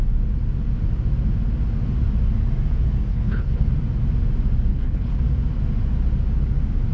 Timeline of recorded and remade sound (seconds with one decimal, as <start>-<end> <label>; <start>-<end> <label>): 0.0-3.1 recorded; 3.1-3.7 remade; 3.7-4.7 recorded; 4.7-5.2 remade; 5.2-6.9 recorded